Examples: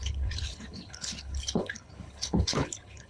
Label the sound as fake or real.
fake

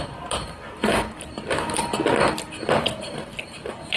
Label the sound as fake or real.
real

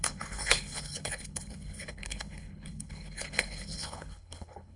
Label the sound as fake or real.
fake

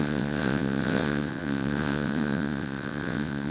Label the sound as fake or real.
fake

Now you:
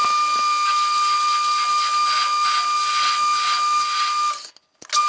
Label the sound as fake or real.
real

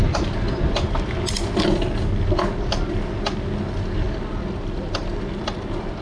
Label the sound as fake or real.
real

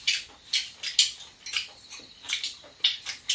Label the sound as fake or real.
real